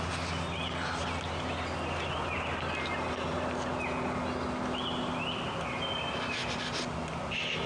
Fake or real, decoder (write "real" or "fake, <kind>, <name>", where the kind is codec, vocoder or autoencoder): real